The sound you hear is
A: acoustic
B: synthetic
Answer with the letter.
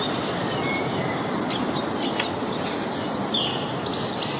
A